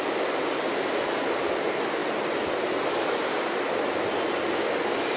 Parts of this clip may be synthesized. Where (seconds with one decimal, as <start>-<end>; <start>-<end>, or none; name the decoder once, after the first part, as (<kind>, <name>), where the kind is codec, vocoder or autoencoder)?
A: none